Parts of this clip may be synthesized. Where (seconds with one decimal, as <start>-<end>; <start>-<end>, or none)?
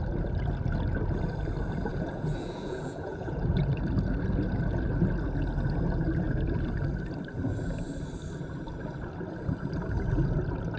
1.9-3.7